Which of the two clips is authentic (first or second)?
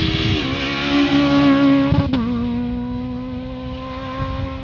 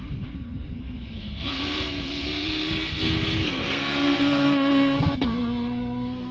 first